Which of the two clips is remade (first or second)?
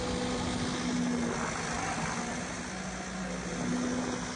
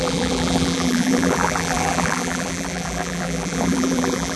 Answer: second